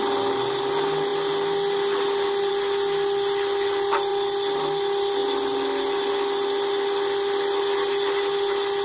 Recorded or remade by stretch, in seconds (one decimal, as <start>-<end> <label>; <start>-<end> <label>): 0.0-8.8 recorded